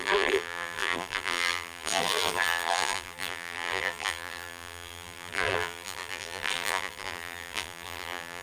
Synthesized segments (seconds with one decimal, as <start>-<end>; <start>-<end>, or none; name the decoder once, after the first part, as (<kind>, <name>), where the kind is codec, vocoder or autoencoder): 0.0-8.4 (vocoder, BigVGAN v2)